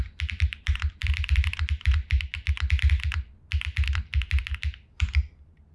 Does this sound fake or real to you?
real